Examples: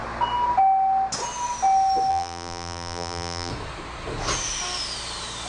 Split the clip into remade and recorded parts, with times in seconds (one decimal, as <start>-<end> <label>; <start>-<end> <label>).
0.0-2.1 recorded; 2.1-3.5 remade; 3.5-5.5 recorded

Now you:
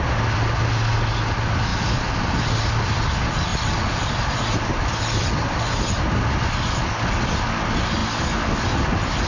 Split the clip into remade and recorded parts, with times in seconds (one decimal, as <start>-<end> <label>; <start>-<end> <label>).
0.0-1.7 recorded; 1.7-2.2 remade; 2.2-3.5 recorded; 3.5-4.3 remade; 4.3-9.3 recorded

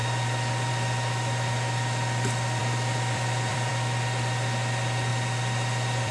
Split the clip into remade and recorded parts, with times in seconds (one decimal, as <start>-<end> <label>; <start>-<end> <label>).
0.0-0.7 remade; 0.7-2.6 recorded; 2.6-3.7 remade; 3.7-5.1 recorded; 5.1-6.1 remade

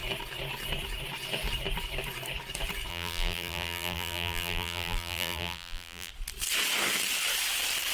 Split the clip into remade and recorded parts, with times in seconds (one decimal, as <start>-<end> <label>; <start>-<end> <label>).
0.0-2.9 recorded; 2.9-6.1 remade; 6.1-7.9 recorded

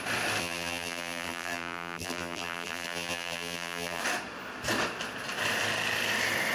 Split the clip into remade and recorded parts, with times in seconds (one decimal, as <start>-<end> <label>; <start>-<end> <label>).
0.0-0.4 recorded; 0.4-4.0 remade; 4.0-6.5 recorded

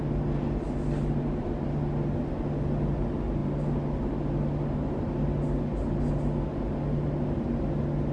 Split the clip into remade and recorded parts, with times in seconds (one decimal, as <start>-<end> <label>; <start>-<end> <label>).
0.0-8.1 recorded